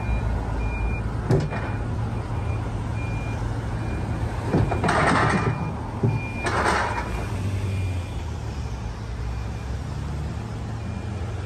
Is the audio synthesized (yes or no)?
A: no